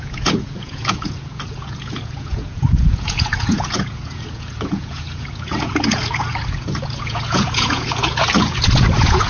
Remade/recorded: remade